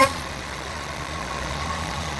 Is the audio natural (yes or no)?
no